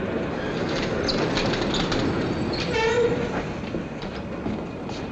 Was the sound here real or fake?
real